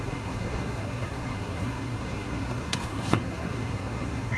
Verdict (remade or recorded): remade